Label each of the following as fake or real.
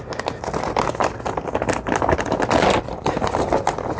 real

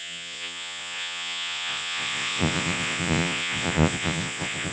fake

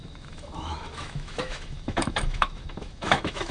fake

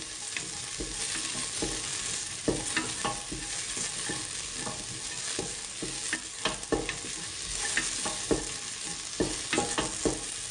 real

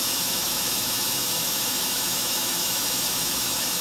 fake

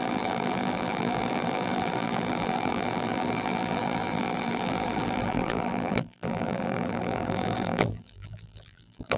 fake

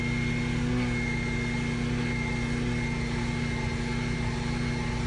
real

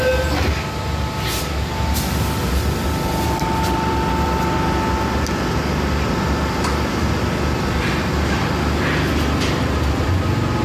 real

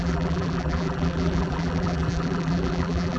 fake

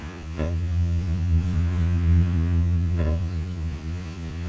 fake